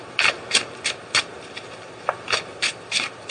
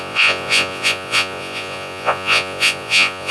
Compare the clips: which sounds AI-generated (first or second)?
second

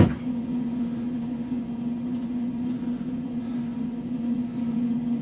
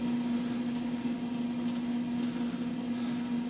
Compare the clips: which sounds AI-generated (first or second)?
first